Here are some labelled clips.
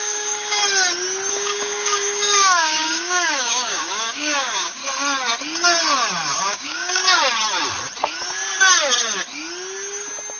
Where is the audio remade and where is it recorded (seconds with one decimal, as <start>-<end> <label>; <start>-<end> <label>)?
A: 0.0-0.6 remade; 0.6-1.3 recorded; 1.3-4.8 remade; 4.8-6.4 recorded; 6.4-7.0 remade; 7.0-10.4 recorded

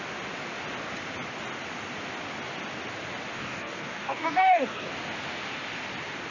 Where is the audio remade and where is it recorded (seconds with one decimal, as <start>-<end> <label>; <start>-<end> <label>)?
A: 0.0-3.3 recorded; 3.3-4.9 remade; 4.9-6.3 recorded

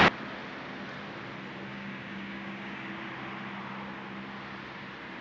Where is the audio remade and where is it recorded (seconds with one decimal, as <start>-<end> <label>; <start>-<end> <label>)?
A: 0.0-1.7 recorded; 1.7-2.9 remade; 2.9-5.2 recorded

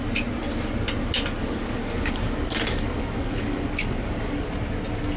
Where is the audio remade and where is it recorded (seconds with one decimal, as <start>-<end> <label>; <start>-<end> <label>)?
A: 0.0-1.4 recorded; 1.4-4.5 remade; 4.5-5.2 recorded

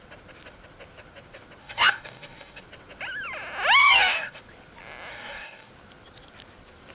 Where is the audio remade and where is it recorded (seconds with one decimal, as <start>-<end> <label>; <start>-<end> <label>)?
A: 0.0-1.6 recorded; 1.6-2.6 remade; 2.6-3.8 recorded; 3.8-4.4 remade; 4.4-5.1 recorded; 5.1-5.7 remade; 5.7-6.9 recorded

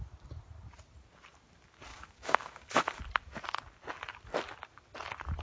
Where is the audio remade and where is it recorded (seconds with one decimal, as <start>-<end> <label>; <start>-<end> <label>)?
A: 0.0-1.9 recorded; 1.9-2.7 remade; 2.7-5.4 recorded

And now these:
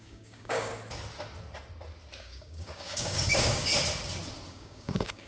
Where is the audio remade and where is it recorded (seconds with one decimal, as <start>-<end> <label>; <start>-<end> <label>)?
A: 0.0-0.7 remade; 0.7-2.2 recorded; 2.2-3.7 remade; 3.7-4.5 recorded; 4.5-5.3 remade

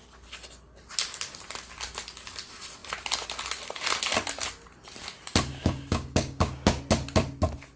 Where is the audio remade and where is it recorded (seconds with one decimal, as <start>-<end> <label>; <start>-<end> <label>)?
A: 0.0-5.5 recorded; 5.5-6.8 remade; 6.8-7.8 recorded